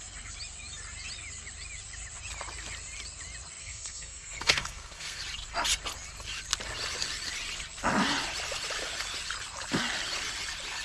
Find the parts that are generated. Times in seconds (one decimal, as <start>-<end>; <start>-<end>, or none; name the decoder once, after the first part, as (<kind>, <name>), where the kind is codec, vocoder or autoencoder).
3.6-5.2 (codec, SNAC)